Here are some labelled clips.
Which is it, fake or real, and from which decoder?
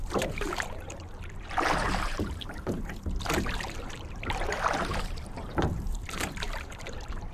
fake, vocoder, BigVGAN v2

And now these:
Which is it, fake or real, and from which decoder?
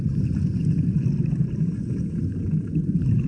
real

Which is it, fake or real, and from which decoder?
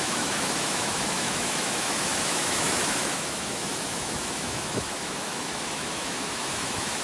fake, autoencoder, DAC-VAE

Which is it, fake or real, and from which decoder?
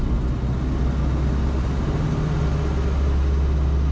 real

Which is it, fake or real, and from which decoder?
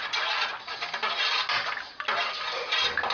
real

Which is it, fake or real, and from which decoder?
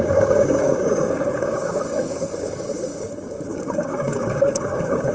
fake, codec, DAC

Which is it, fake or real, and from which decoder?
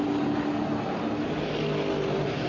real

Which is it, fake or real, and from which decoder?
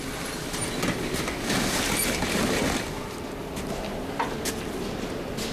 real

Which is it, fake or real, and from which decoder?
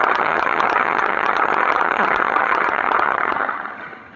fake, vocoder, HiFi-GAN